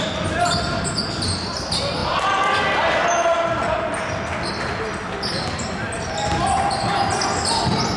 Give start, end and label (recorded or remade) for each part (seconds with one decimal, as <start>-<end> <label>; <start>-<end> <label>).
0.0-8.0 recorded